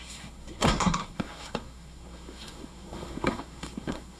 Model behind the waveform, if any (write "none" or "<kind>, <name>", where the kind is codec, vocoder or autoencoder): codec, SNAC